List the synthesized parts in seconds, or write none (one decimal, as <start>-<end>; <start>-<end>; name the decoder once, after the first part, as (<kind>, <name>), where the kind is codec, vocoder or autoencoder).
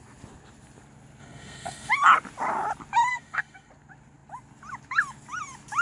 1.2-1.9 (codec, SNAC); 3.1-3.7